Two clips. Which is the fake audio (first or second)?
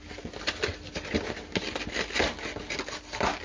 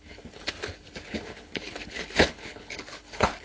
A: second